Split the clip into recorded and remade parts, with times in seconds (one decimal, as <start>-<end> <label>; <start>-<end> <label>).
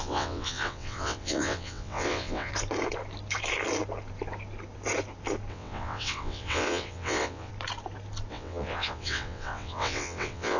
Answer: 0.0-2.5 remade; 2.5-5.5 recorded; 5.5-7.5 remade; 7.5-8.3 recorded; 8.3-10.6 remade